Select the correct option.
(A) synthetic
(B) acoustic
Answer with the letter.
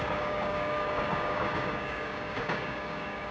A